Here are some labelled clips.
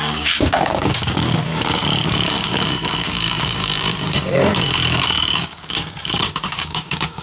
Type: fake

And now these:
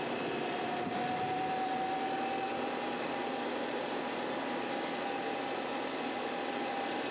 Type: real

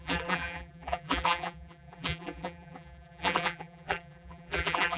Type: fake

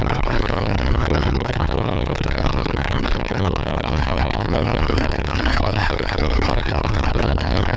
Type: fake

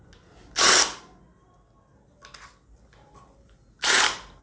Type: real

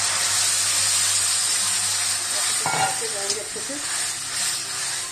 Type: real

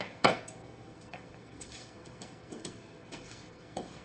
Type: fake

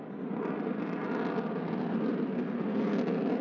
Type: real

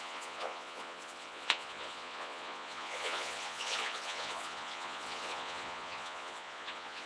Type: fake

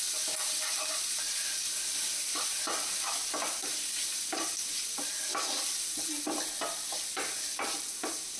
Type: real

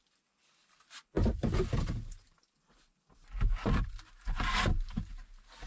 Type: real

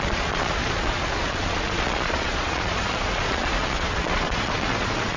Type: fake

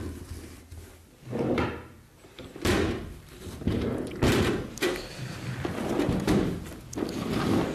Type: fake